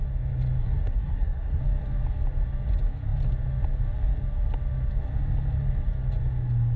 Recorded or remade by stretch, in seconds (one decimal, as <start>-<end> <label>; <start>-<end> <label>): 0.0-0.6 recorded; 0.6-1.6 remade; 1.6-6.8 recorded